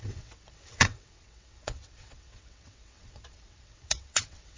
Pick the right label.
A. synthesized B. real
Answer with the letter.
A